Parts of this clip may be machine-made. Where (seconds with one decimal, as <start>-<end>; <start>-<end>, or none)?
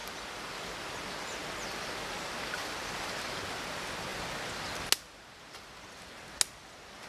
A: none